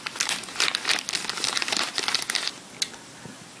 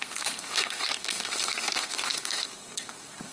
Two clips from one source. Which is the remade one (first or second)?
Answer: second